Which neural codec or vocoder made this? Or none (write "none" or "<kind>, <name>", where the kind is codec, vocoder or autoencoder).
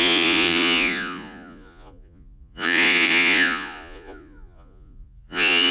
vocoder, Vocos